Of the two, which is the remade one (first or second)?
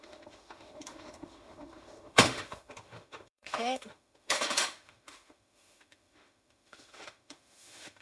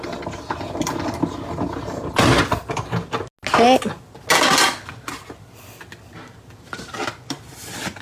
first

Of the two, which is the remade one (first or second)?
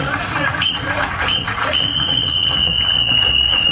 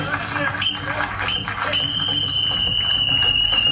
first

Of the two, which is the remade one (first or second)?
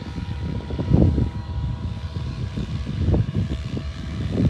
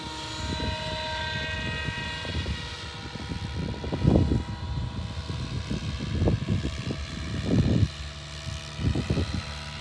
first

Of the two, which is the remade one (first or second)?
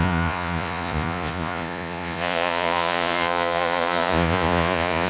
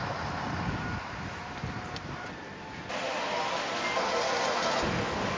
first